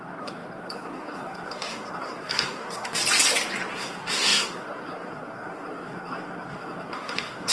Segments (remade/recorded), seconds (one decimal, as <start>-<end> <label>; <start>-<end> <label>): 0.0-3.0 remade; 3.0-3.7 recorded; 3.7-7.5 remade